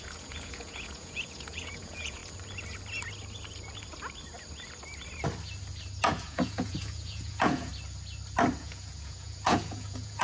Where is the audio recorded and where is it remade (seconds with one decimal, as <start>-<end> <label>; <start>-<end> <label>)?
0.0-2.2 remade; 2.2-6.2 recorded; 6.2-7.7 remade; 7.7-8.6 recorded; 8.6-10.2 remade